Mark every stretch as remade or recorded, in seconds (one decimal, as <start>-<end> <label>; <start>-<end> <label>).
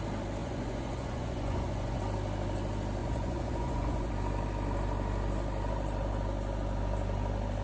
0.0-0.4 recorded; 0.4-2.0 remade; 2.0-3.0 recorded; 3.0-4.1 remade; 4.1-7.6 recorded